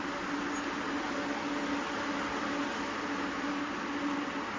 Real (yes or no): yes